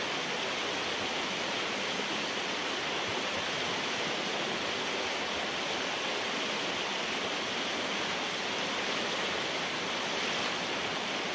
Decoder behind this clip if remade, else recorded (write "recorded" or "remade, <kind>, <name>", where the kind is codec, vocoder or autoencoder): recorded